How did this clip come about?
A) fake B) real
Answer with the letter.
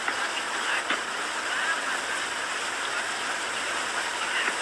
A